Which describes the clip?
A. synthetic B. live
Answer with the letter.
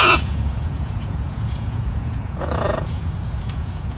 A